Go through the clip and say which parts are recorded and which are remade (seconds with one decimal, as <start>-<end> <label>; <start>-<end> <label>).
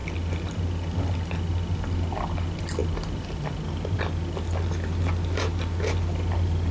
0.0-6.7 recorded